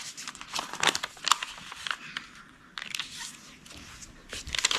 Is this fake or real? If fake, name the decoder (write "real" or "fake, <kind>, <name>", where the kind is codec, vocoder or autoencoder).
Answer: real